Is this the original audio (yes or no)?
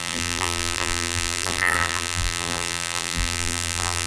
no